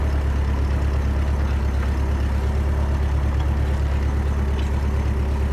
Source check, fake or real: real